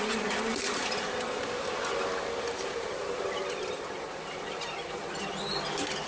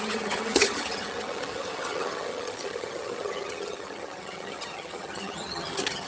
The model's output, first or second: second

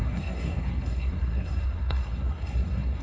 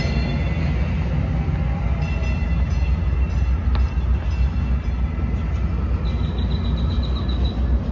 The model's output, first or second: first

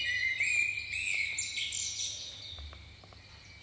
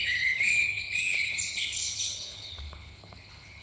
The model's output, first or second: second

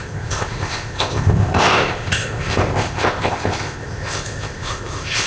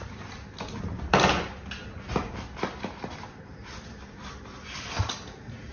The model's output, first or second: first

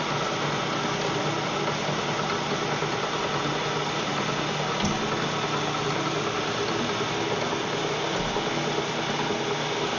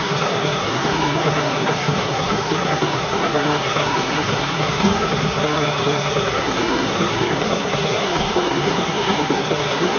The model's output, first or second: second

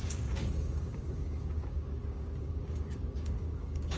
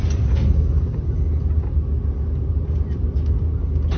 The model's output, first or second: first